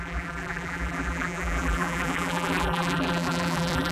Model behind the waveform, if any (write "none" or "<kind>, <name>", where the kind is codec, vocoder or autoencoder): vocoder, BigVGAN v2